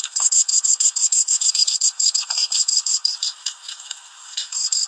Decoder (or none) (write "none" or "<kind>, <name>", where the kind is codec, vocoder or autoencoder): codec, SNAC